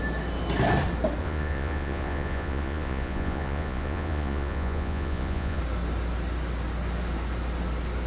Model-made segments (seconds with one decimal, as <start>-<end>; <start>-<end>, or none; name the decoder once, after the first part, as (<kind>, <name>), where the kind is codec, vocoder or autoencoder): 1.2-5.6 (vocoder, Vocos)